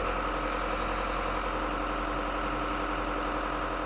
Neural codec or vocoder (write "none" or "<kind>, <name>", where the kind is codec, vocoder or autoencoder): none